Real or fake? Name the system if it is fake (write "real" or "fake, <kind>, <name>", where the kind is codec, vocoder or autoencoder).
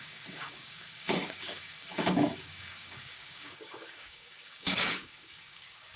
fake, codec, DAC